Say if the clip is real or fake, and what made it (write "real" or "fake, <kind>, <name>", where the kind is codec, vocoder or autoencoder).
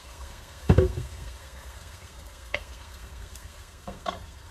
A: fake, codec, SNAC